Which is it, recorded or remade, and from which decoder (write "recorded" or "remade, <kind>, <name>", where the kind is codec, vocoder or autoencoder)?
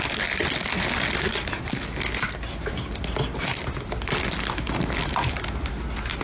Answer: recorded